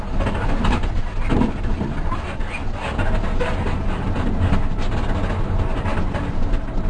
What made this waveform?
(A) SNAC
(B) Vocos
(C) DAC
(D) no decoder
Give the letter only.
D